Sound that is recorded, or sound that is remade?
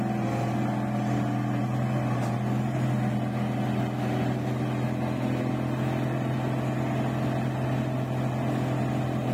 recorded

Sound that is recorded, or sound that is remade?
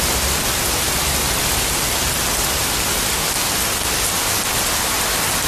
recorded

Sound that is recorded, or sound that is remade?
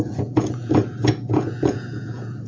remade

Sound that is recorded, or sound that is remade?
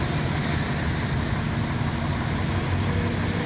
recorded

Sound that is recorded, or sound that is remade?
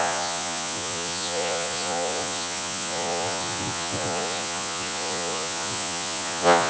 remade